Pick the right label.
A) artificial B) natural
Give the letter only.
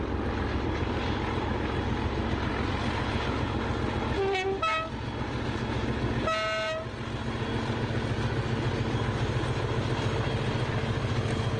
B